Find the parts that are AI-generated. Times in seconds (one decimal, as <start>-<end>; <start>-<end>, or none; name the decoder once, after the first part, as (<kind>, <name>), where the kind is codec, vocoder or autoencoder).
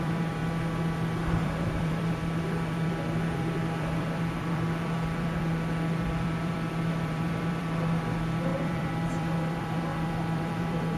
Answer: 0.0-0.4 (vocoder, BigVGAN v2); 1.4-5.5; 6.0-11.0